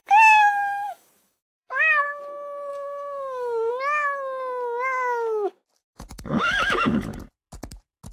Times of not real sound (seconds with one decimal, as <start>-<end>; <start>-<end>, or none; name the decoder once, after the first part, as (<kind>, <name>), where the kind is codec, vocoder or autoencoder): 0.0-2.2 (codec, DAC); 2.7-3.7; 5.8-7.2